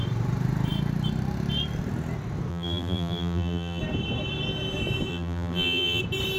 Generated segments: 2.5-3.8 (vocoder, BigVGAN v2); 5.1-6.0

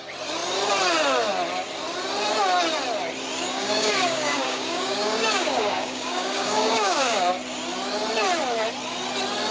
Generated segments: 3.5-7.3 (codec, DAC)

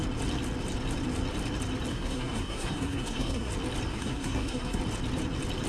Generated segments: 1.9-3.5 (codec, SNAC); 3.9-4.8